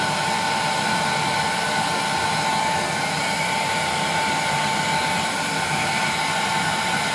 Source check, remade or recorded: recorded